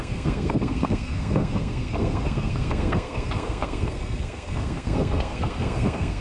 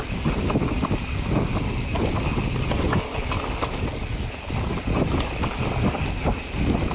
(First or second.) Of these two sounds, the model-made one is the first